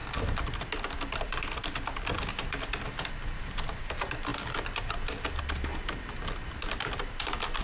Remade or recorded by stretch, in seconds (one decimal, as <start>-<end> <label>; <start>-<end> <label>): 0.0-7.6 recorded